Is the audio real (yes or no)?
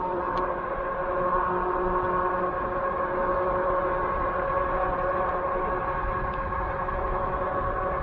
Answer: yes